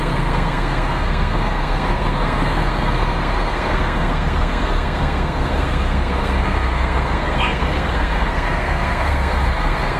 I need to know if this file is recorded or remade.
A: remade